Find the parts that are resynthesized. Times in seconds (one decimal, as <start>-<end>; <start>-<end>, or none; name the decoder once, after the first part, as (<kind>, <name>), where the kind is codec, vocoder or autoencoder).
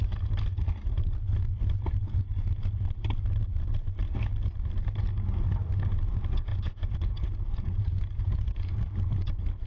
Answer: 6.5-8.7 (vocoder, Vocos)